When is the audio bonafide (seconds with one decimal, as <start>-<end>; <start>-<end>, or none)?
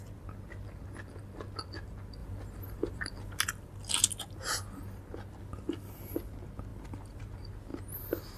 0.0-2.2; 3.4-6.7; 7.2-8.4